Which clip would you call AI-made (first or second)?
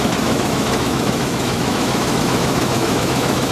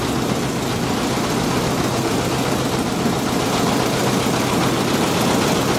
first